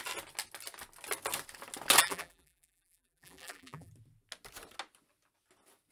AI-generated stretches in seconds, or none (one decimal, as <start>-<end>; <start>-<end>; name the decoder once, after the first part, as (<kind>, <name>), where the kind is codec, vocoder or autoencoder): 2.0-3.9 (vocoder, BigVGAN v2)